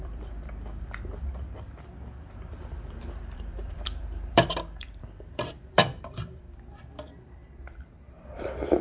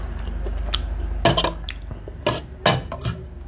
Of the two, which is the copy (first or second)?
first